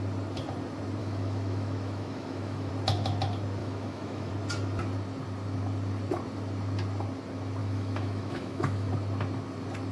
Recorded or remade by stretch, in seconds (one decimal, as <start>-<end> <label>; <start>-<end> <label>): 0.0-1.0 recorded; 1.0-2.7 remade; 2.7-3.6 recorded; 3.6-4.3 remade; 4.3-7.6 recorded; 7.6-8.9 remade; 8.9-9.9 recorded